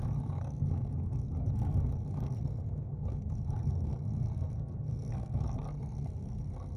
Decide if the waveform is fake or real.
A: fake